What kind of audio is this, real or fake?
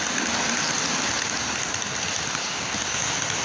real